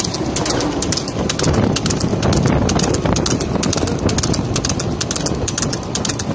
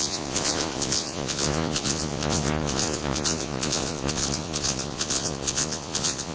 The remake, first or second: second